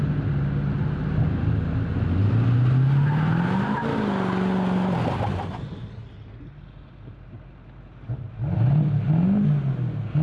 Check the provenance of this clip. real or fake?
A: real